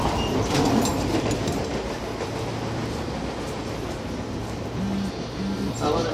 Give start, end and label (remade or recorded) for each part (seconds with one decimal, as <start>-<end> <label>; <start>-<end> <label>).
0.0-0.9 recorded; 0.9-1.6 remade; 1.6-6.1 recorded